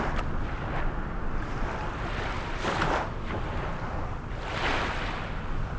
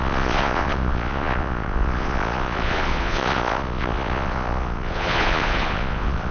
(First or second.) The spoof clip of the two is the second